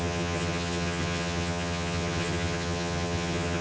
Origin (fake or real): fake